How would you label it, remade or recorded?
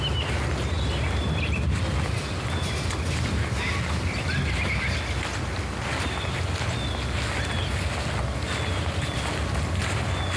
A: recorded